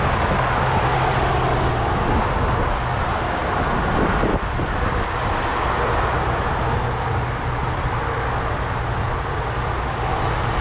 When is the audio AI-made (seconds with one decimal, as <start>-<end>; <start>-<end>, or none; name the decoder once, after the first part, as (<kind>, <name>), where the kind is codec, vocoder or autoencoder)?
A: none

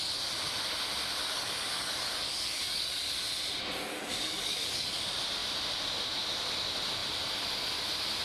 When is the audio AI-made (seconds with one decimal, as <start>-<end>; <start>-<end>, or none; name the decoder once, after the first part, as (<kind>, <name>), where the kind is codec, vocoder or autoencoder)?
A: 1.2-3.1 (codec, DAC); 3.9-4.9

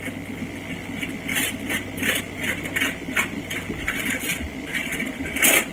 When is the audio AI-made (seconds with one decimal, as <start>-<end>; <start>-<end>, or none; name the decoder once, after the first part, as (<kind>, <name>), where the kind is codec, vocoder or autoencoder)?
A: none

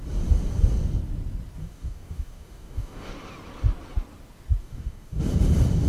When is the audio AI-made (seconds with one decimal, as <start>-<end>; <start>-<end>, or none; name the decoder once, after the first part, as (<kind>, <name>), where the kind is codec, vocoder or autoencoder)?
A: 1.6-3.1 (codec, DAC); 4.6-5.2

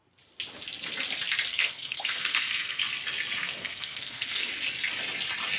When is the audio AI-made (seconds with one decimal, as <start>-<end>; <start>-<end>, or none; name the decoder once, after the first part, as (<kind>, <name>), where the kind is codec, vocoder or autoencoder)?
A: 1.5-2.8 (codec, SNAC); 3.4-4.5